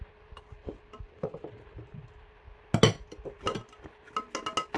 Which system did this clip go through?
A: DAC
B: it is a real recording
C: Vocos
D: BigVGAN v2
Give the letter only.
B